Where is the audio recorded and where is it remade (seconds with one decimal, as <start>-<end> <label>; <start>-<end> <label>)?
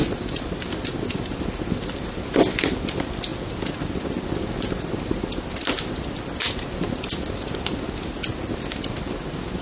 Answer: 0.0-9.6 recorded